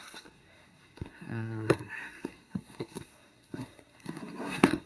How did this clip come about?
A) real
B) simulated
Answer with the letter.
B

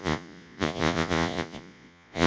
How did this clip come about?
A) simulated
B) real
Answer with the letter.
A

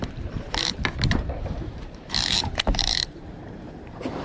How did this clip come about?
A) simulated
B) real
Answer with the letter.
A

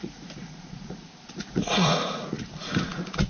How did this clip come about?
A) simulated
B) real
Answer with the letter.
A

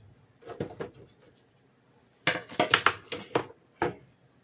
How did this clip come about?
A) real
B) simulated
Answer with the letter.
A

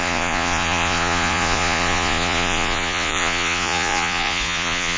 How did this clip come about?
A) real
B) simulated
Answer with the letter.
B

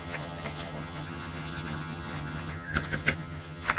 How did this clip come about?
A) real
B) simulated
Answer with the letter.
B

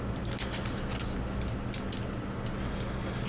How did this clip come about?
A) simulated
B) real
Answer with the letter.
B